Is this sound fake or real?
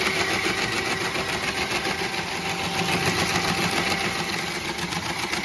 real